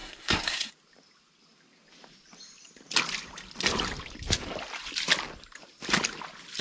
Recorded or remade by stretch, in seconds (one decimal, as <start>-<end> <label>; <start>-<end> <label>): 0.0-0.7 remade; 0.7-6.6 recorded